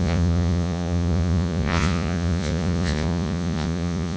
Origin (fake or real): fake